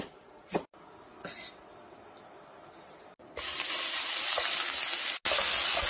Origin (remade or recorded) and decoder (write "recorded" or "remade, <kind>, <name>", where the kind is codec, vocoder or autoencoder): recorded